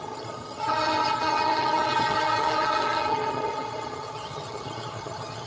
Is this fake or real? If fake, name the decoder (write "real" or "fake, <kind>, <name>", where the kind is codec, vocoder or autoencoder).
fake, vocoder, HiFi-GAN